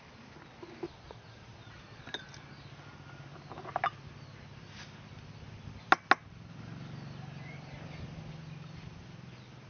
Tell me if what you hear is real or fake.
real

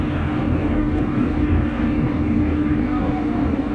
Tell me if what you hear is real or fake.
fake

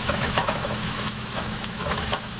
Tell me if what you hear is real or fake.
fake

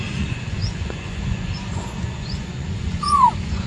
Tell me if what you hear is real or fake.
fake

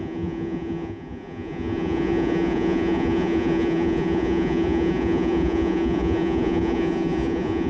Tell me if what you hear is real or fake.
fake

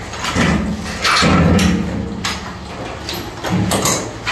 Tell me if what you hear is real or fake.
real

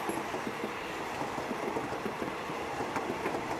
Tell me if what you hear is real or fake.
real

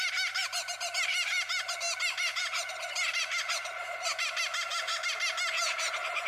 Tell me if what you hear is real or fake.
real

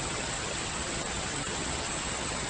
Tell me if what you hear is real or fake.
fake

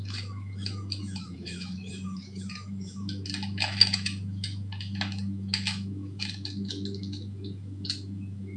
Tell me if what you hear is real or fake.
fake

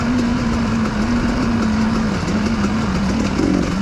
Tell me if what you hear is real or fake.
real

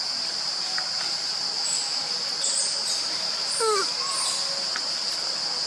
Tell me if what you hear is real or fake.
real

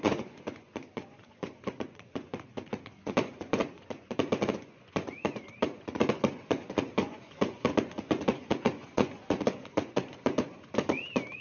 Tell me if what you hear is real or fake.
fake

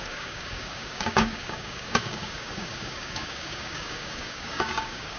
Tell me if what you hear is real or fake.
fake